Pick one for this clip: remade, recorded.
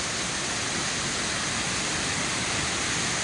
recorded